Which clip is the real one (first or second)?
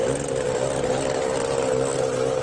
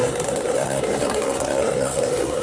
first